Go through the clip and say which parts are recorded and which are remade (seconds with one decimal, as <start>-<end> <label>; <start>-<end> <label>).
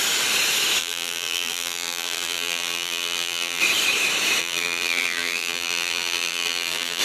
0.0-0.8 recorded; 0.8-3.6 remade; 3.6-4.4 recorded; 4.4-7.0 remade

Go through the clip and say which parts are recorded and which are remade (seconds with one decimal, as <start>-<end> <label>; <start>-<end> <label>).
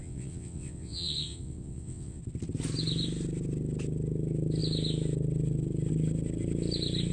0.0-2.2 remade; 2.2-7.1 recorded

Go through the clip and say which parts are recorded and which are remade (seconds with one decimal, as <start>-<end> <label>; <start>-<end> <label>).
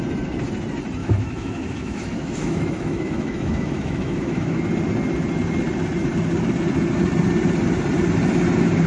0.0-1.0 recorded; 1.0-4.6 remade; 4.6-8.9 recorded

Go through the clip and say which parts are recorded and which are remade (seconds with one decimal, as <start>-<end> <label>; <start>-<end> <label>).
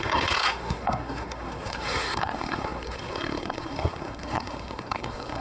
0.0-5.4 remade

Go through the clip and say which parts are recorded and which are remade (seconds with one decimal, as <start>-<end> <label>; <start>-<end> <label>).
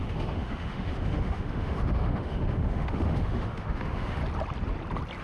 0.0-4.2 remade; 4.2-5.2 recorded